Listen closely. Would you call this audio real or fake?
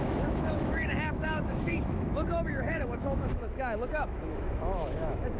fake